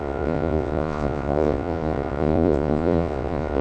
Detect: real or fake fake